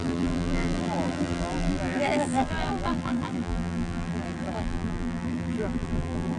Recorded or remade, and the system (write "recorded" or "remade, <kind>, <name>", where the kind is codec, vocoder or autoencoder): remade, vocoder, BigVGAN v2